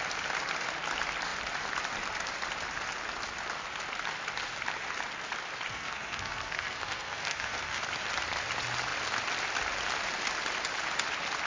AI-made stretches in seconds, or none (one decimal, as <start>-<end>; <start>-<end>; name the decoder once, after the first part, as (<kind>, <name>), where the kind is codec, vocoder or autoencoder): 5.7-7.8 (codec, SNAC)